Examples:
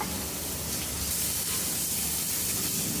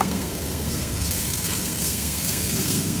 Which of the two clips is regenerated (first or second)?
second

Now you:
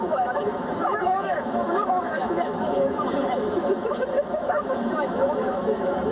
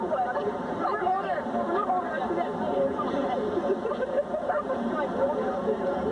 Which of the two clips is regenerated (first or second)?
first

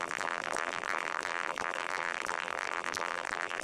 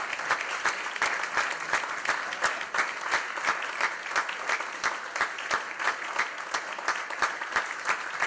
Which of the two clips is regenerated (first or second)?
first